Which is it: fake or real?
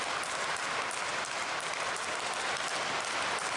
fake